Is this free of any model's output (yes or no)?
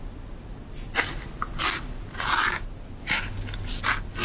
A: yes